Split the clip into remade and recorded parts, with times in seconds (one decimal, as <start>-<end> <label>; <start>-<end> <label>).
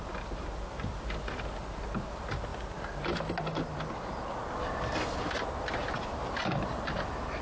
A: 0.0-7.4 recorded